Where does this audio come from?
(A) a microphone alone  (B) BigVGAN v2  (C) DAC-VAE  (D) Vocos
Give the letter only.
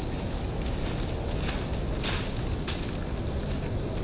A